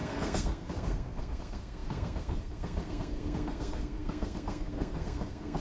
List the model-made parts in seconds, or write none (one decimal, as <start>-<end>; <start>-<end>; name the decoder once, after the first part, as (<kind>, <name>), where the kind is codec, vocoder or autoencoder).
0.0-5.6 (codec, SNAC)